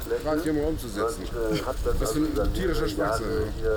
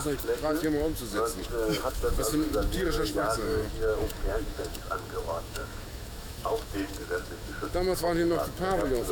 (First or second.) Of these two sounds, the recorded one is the first